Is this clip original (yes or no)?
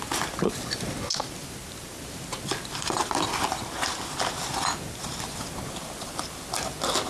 yes